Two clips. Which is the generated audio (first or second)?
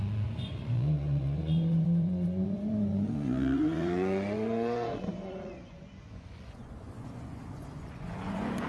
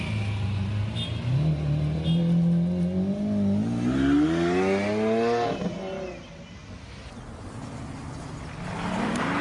first